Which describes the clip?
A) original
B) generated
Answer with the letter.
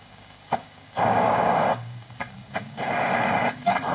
B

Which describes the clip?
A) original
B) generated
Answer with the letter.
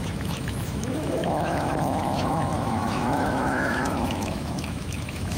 B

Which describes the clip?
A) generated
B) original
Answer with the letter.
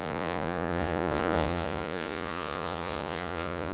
A